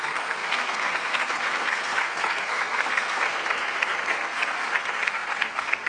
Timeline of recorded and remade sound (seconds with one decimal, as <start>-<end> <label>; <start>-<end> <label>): 0.0-5.9 remade